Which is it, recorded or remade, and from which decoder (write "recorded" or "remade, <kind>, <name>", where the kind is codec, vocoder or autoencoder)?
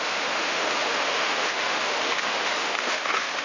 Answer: remade, autoencoder, DAC-VAE